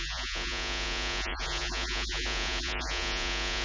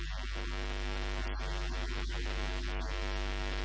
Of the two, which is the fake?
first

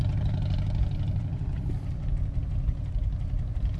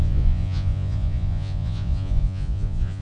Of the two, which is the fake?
second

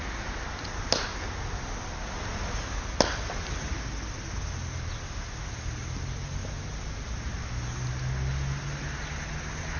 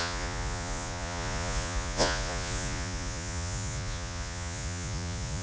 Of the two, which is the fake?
second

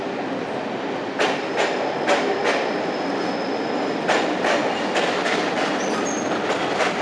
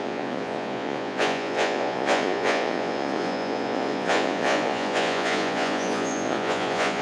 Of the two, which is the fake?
second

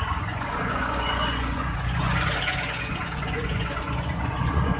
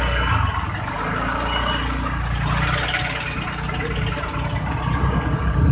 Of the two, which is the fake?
first